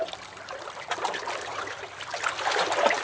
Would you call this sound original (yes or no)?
yes